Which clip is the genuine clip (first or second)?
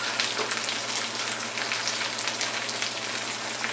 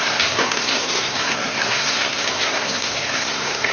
first